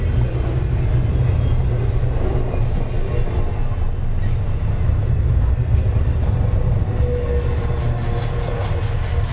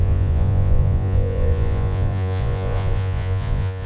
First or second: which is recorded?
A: first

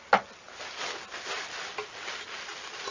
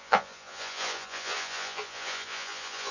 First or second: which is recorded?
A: first